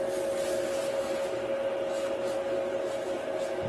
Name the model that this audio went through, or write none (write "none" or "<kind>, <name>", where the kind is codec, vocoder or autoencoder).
none